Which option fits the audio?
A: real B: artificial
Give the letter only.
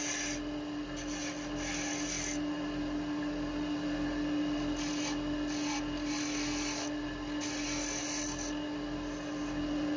A